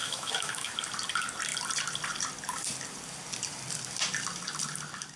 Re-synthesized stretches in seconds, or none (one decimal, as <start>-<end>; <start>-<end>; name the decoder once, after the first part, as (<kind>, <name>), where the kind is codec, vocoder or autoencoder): 0.0-0.7 (autoencoder, DAC-VAE)